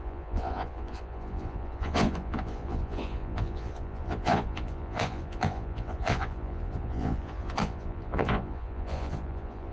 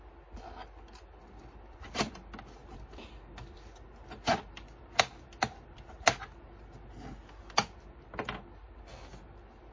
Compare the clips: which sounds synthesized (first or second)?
first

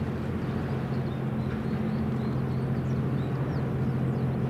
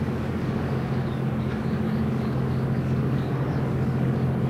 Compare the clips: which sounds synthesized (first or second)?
second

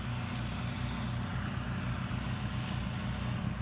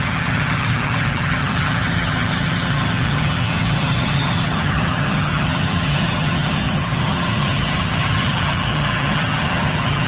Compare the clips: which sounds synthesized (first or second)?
second